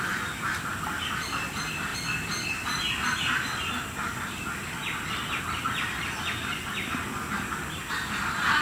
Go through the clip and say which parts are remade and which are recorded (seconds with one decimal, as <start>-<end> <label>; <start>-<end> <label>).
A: 0.0-8.6 recorded